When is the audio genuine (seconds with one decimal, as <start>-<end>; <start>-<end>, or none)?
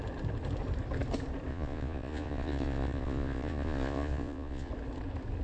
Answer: 0.0-1.5; 4.7-5.4